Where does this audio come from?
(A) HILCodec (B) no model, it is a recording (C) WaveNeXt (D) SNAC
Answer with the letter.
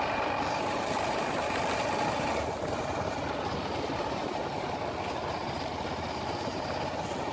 B